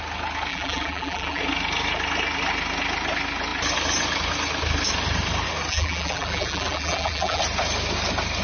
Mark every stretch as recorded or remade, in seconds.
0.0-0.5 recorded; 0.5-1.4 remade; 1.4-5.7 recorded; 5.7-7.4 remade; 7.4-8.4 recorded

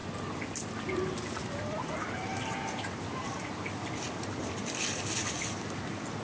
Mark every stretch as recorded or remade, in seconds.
0.0-0.7 remade; 0.7-2.3 recorded; 2.3-3.8 remade; 3.8-6.2 recorded

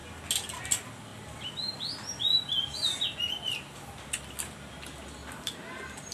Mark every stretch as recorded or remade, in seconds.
0.0-5.2 recorded; 5.2-6.1 remade

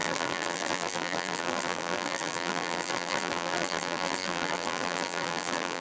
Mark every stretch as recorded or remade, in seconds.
0.0-5.8 remade